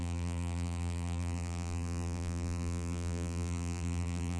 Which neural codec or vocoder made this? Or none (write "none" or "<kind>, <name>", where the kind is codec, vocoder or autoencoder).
vocoder, BigVGAN v2